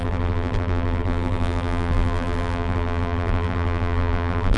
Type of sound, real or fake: fake